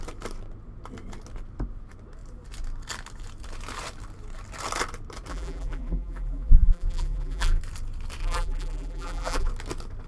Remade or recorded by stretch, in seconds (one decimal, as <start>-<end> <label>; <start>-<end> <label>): 0.0-5.3 recorded; 5.3-7.6 remade; 7.6-8.2 recorded; 8.2-9.5 remade; 9.5-10.1 recorded